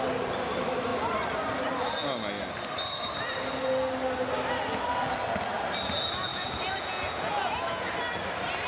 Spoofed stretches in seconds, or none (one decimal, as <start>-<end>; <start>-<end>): 6.3-7.9